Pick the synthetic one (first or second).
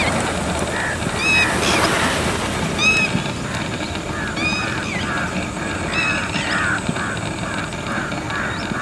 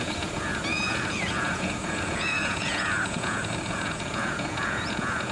second